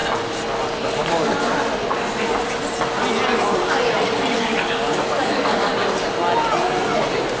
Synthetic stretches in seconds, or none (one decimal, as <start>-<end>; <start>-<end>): 4.4-5.7